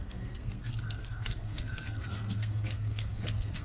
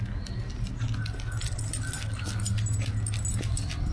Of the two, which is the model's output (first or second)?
first